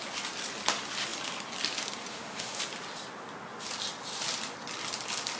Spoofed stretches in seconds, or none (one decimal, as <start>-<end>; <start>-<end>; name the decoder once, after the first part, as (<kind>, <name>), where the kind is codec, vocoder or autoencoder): 2.1-2.6 (autoencoder, DAC-VAE)